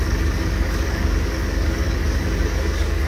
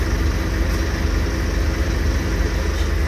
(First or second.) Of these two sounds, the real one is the second